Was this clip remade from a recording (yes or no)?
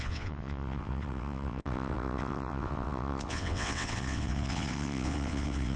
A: yes